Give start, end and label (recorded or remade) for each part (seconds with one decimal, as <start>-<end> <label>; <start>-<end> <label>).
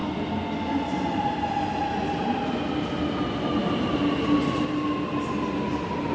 0.0-6.1 recorded